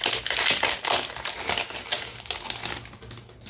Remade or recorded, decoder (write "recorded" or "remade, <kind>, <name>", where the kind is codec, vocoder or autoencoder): recorded